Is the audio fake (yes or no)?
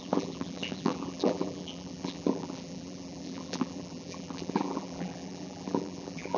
yes